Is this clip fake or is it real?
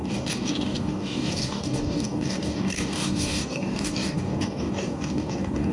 fake